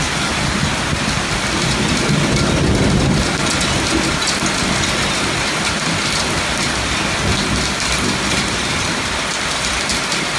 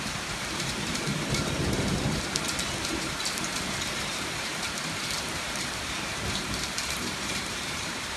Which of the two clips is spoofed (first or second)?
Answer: second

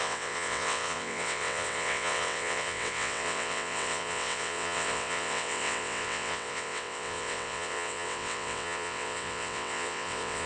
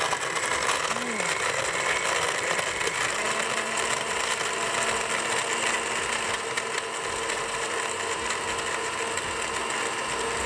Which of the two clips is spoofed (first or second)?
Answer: first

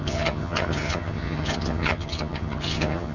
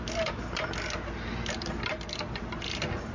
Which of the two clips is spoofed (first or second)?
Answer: first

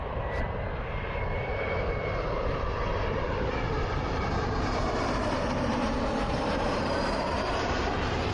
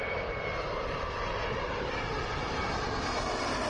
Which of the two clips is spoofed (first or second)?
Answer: first